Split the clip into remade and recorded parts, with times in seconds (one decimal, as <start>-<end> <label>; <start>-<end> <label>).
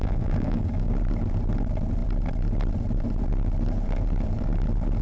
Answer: 0.0-0.9 remade; 0.9-5.0 recorded